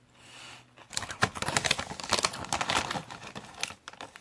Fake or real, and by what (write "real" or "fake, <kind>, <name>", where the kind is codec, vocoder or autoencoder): real